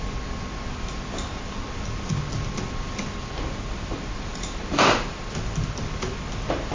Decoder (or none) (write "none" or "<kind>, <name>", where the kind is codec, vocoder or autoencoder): none